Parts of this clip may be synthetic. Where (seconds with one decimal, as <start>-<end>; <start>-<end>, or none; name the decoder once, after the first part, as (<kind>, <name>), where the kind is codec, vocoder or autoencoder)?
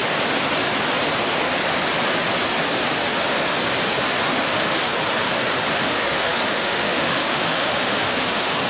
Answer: 4.3-4.9 (autoencoder, DAC-VAE); 5.7-8.7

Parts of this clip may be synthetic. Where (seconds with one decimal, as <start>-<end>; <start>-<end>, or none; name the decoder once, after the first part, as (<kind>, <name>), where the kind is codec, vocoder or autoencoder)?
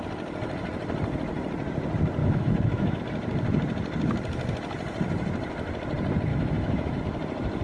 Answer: 2.2-3.0 (autoencoder, DAC-VAE); 6.3-7.0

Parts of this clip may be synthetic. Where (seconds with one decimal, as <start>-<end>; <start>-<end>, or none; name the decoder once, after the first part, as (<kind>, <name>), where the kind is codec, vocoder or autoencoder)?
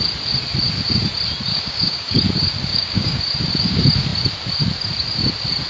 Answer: 1.5-2.2 (codec, DAC); 2.7-3.2